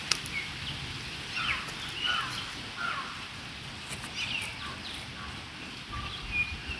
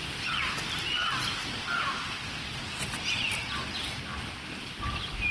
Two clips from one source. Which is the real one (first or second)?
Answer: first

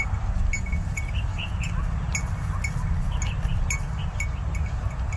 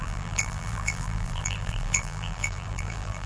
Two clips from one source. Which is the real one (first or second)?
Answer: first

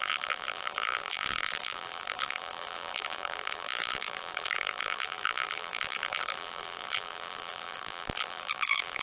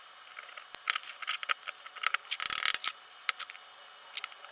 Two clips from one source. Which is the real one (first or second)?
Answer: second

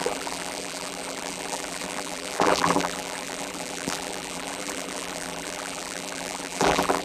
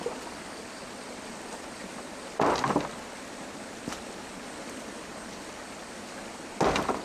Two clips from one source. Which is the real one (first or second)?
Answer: second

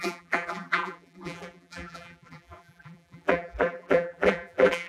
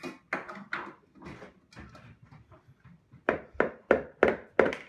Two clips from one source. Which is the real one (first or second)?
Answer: second